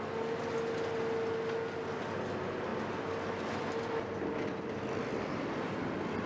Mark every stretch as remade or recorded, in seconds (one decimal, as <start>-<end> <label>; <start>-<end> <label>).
0.0-6.3 recorded